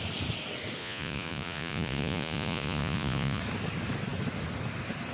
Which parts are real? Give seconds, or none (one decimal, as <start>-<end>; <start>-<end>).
0.0-0.8; 3.4-5.1